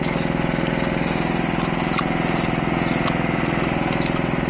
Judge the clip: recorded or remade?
recorded